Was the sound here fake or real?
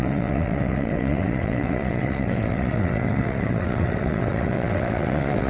fake